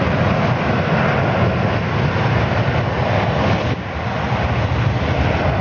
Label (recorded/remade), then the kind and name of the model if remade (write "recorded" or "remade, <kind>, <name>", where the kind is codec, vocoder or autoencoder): recorded